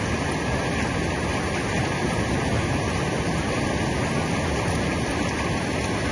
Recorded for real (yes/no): yes